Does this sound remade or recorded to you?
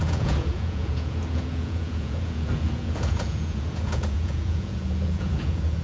remade